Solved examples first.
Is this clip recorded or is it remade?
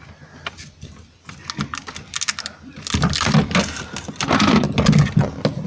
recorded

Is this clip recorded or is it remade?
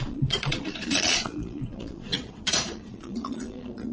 remade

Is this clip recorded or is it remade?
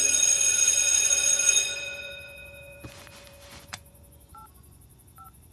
remade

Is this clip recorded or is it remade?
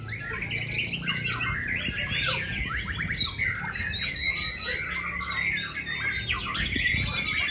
recorded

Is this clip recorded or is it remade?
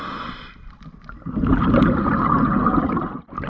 recorded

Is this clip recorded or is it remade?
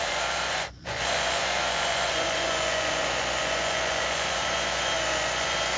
remade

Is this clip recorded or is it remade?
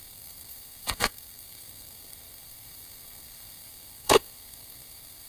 remade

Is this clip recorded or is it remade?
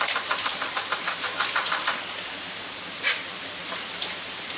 recorded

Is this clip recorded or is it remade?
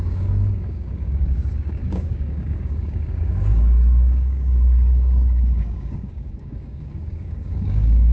remade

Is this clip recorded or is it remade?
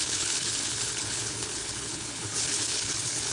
remade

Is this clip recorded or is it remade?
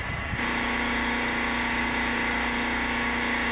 remade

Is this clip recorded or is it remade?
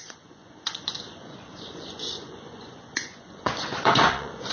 remade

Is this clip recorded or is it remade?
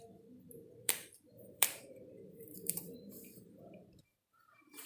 remade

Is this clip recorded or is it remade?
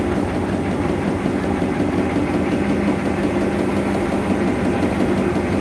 recorded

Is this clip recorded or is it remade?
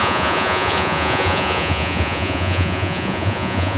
remade